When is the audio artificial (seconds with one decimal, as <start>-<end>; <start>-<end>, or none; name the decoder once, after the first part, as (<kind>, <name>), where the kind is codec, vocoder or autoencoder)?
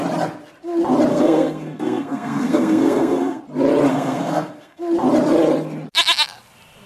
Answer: 1.1-3.4 (codec, SNAC); 3.9-4.8